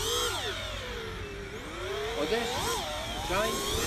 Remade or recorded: recorded